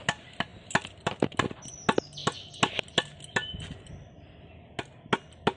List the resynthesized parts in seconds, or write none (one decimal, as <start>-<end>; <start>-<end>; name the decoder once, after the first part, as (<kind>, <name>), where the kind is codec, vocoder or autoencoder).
none